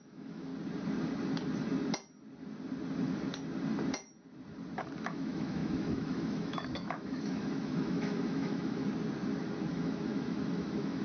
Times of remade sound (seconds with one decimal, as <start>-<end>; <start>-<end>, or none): 0.0-0.5; 5.0-8.8; 9.7-11.0